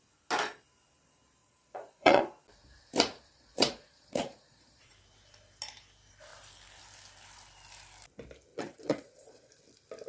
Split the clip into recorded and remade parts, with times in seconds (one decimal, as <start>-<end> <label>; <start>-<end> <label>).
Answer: 0.0-1.4 recorded; 1.4-2.2 remade; 2.2-3.3 recorded; 3.3-4.9 remade; 4.9-8.5 recorded; 8.5-9.5 remade; 9.5-10.1 recorded